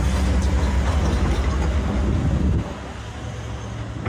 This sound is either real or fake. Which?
real